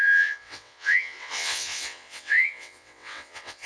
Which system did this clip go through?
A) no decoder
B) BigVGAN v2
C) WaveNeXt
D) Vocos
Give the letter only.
C